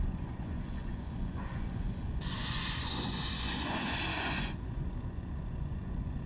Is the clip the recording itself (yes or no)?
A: no